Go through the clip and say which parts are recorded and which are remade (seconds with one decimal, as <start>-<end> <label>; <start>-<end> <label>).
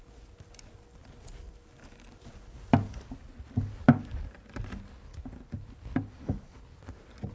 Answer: 0.0-7.3 recorded